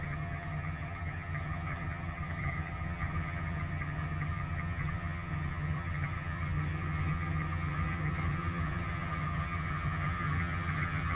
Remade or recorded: remade